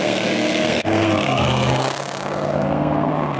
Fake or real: fake